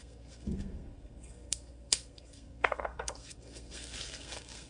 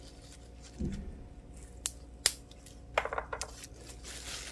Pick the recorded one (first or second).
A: second